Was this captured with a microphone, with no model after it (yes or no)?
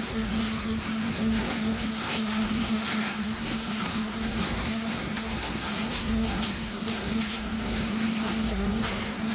no